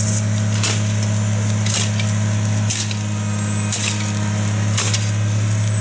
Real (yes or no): yes